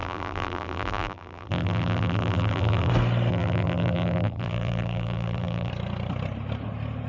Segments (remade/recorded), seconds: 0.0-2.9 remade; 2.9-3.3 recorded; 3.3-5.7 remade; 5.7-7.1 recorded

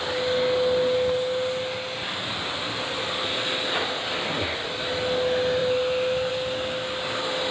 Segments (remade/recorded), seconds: 0.0-5.6 recorded; 5.6-6.3 remade; 6.3-7.5 recorded

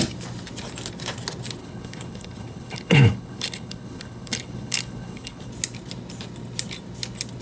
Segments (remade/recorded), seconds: 0.0-1.6 recorded; 1.6-5.5 remade; 5.5-7.4 recorded

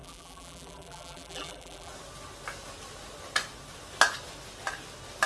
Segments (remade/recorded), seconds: 0.0-1.9 remade; 1.9-5.3 recorded

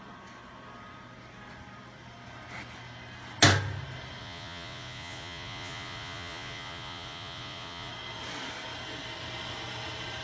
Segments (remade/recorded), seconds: 0.0-4.2 recorded; 4.2-7.9 remade; 7.9-10.2 recorded

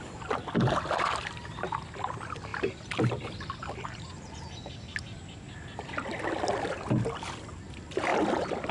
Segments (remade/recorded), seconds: 0.0-8.7 recorded

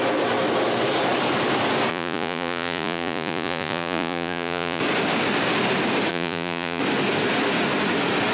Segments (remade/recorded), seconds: 0.0-1.9 recorded; 1.9-4.8 remade; 4.8-6.1 recorded; 6.1-6.8 remade; 6.8-8.3 recorded